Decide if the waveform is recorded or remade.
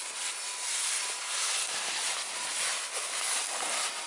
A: recorded